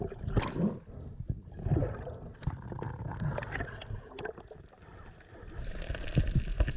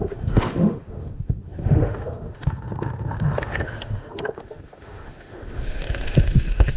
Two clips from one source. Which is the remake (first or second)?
second